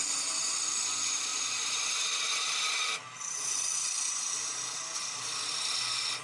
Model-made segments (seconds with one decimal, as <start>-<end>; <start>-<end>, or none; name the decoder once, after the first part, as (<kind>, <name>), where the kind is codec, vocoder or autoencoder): 5.0-5.5 (vocoder, BigVGAN v2)